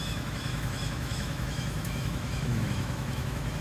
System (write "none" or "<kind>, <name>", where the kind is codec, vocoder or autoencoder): autoencoder, DAC-VAE